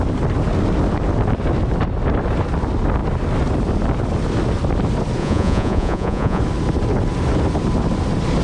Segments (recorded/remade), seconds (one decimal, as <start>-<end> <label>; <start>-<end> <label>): 0.0-5.2 recorded; 5.2-6.4 remade; 6.4-8.4 recorded